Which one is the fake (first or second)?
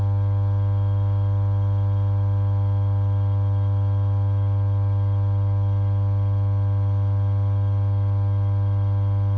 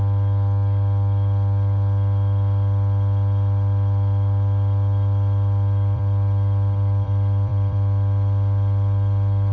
second